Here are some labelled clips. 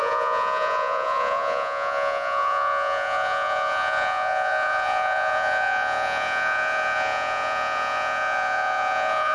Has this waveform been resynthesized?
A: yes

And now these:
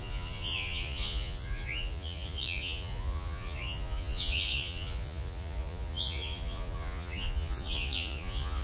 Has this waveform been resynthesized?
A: yes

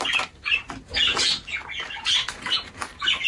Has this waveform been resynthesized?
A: no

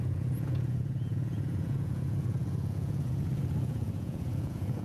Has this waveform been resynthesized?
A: yes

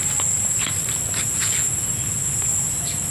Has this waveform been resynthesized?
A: no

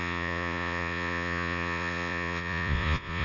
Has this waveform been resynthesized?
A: yes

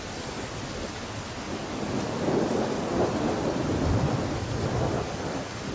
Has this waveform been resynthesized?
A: no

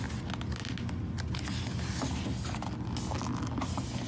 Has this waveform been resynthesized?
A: no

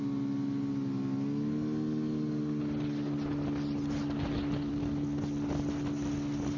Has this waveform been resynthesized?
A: no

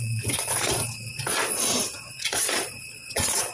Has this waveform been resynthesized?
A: yes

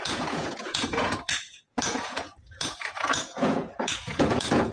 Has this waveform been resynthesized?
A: yes